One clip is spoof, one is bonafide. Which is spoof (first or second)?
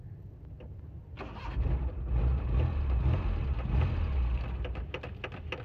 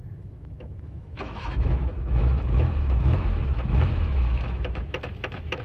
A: second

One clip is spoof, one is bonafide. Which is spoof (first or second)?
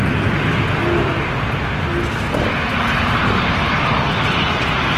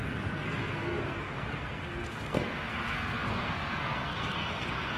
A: second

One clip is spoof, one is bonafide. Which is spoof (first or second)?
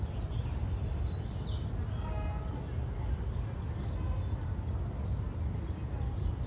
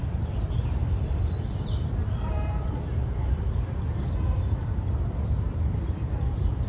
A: second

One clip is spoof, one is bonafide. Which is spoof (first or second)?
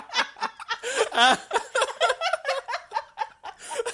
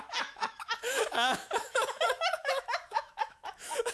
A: second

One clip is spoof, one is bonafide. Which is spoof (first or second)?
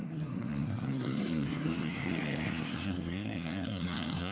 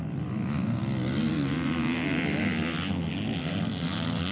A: first